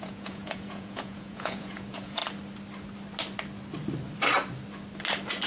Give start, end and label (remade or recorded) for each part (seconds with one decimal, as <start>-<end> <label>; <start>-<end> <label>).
0.0-2.2 remade; 2.2-5.5 recorded